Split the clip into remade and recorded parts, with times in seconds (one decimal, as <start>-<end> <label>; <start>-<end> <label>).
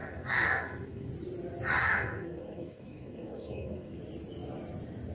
0.0-1.1 remade; 1.1-1.8 recorded; 1.8-4.0 remade; 4.0-5.1 recorded